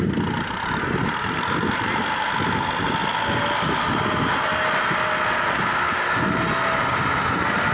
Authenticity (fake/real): real